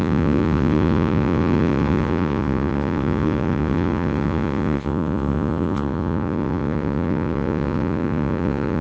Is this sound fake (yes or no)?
yes